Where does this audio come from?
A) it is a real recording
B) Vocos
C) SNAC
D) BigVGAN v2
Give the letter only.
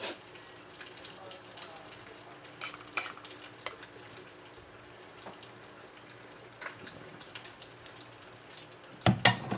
A